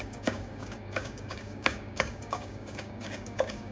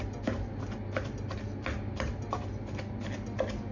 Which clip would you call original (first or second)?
second